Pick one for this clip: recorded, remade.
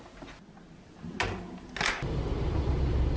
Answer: recorded